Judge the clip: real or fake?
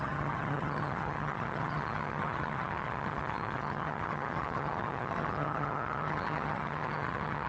fake